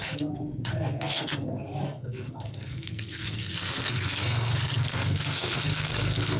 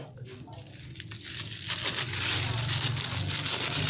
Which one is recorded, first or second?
second